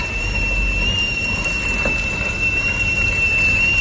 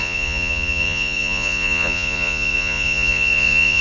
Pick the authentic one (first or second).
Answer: first